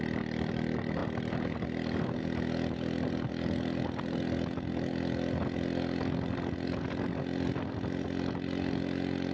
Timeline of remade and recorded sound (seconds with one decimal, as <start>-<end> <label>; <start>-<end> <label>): 0.0-9.3 recorded

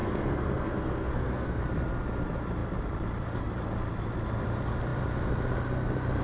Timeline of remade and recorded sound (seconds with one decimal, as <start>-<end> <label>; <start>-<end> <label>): 0.0-1.6 remade; 1.6-6.2 recorded

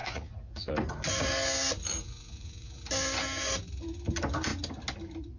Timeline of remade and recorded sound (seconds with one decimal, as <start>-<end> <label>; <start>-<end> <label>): 0.0-0.7 remade; 0.7-2.0 recorded; 2.0-2.8 remade; 2.8-5.4 recorded

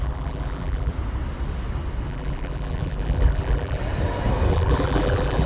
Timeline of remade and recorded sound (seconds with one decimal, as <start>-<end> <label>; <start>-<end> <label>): 0.0-0.9 remade; 0.9-2.1 recorded; 2.1-3.8 remade; 3.8-4.5 recorded; 4.5-5.5 remade